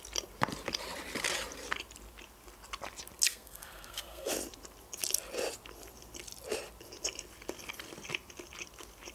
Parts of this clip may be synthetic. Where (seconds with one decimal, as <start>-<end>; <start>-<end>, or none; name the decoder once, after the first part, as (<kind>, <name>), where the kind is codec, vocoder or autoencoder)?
3.3-4.3 (codec, SNAC)